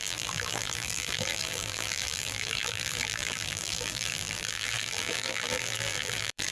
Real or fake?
fake